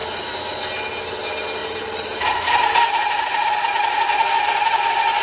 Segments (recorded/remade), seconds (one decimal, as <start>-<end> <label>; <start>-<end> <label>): 0.0-1.6 recorded; 1.6-3.4 remade; 3.4-5.2 recorded